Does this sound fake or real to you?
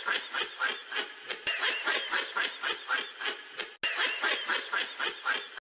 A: real